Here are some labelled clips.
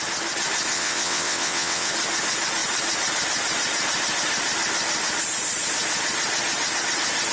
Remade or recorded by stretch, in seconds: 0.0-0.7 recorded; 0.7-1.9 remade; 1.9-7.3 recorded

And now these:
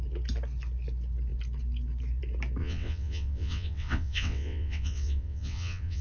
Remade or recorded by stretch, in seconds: 0.0-2.6 recorded; 2.6-6.0 remade

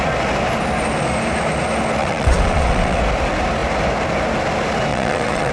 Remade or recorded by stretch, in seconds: 0.0-2.0 recorded; 2.0-3.0 remade; 3.0-4.9 recorded; 4.9-5.5 remade

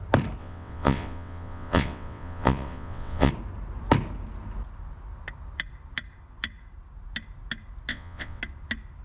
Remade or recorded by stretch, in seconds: 0.0-0.4 recorded; 0.4-3.3 remade; 3.3-7.9 recorded; 7.9-8.4 remade; 8.4-9.0 recorded

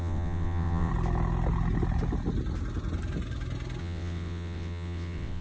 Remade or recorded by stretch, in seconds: 0.0-0.9 remade; 0.9-3.8 recorded; 3.8-5.4 remade